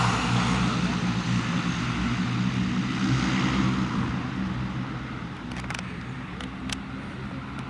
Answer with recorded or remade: recorded